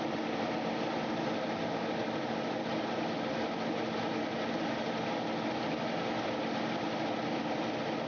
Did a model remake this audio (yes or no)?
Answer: no